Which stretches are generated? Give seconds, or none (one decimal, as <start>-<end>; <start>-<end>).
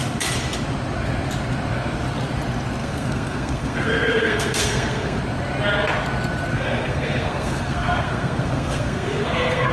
2.8-5.2; 6.5-9.7